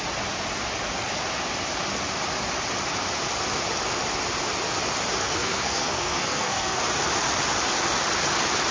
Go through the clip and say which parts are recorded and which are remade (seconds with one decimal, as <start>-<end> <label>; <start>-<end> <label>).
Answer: 0.0-5.2 recorded; 5.2-6.8 remade; 6.8-8.7 recorded